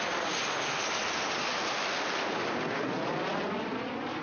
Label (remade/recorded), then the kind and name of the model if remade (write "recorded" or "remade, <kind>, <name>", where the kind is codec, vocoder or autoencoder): recorded